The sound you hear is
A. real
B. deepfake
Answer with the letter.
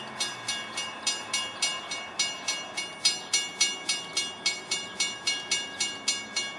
A